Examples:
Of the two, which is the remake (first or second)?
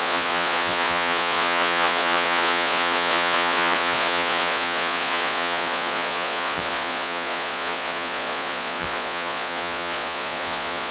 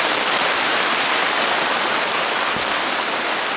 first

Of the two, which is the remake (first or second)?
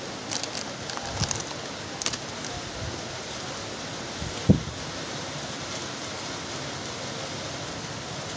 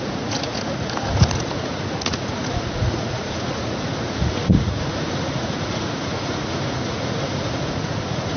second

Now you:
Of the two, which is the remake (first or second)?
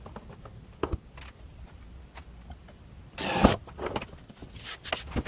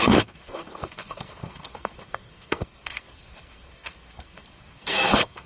second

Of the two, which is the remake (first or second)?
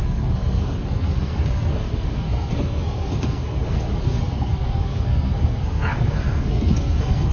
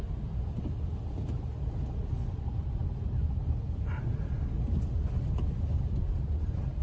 first